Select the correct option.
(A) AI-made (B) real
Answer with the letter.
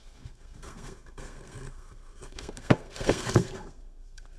A